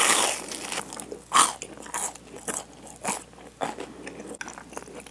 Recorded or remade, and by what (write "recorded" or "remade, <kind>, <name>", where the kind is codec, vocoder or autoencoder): recorded